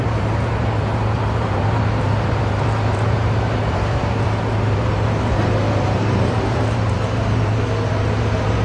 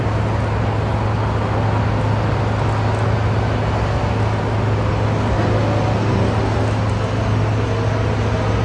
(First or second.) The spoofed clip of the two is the first